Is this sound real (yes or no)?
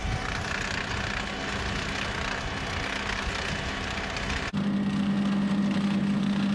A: yes